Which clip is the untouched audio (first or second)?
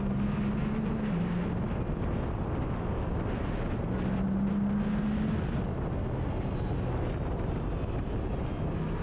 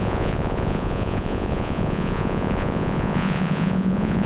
first